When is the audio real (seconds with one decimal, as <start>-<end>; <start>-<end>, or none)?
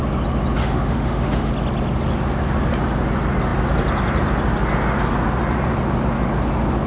0.0-0.6; 1.5-6.9